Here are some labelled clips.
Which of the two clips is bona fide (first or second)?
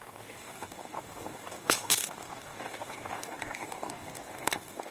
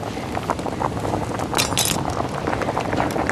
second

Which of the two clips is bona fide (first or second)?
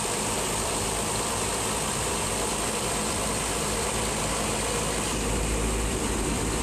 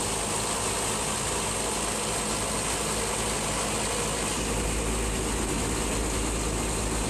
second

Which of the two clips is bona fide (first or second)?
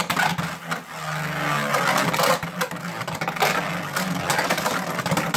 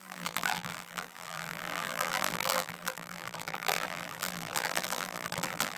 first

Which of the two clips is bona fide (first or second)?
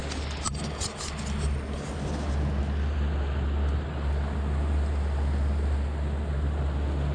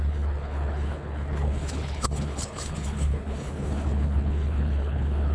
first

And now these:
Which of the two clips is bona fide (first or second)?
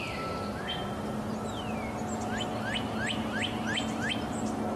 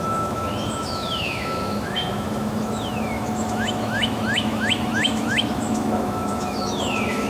first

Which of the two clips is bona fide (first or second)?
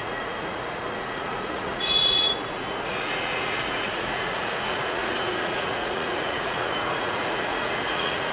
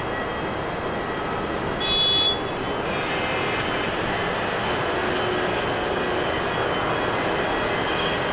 second